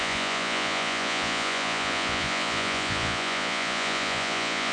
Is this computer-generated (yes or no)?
yes